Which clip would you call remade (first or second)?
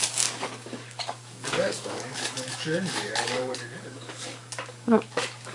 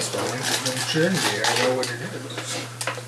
first